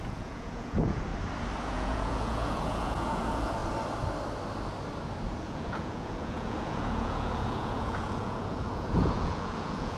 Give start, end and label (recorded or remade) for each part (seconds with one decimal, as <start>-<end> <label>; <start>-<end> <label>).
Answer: 0.0-1.1 remade; 1.1-1.6 recorded; 1.6-3.6 remade; 3.6-5.4 recorded; 5.4-10.0 remade